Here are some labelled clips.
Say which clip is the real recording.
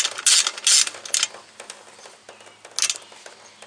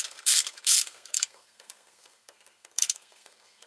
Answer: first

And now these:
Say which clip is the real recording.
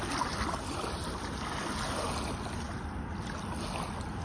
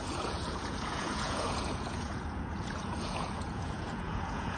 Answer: first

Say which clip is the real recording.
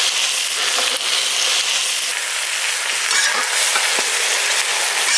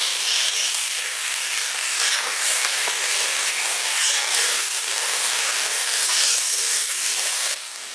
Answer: first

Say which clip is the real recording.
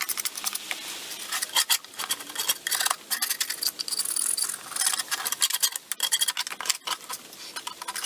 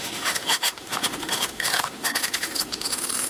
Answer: first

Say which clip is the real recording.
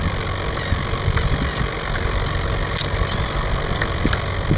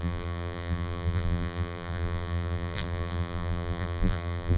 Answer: first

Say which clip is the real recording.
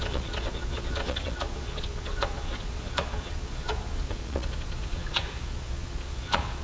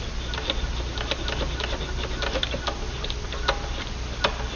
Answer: second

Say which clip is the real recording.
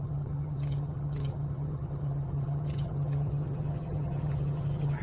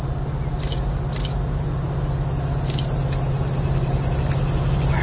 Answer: second